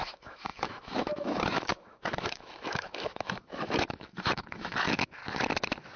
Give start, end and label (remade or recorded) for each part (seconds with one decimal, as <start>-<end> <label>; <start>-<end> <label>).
0.0-5.2 remade; 5.2-6.0 recorded